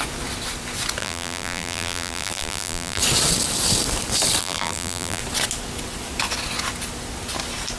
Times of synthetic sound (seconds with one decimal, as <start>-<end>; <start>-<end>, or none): 1.0-3.0; 4.4-5.2